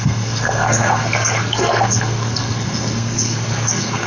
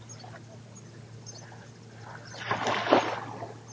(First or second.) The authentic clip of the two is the second